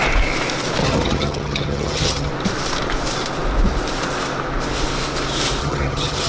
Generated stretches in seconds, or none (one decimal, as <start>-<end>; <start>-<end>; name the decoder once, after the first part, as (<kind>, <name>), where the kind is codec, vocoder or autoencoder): 0.8-2.3 (vocoder, HiFi-GAN); 5.6-6.3